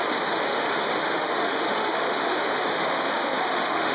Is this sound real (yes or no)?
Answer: no